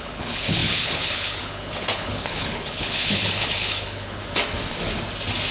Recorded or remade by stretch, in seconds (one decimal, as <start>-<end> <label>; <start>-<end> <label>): 0.0-4.2 remade; 4.2-5.5 recorded